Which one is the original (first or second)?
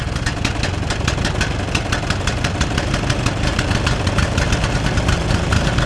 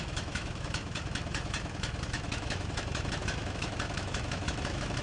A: first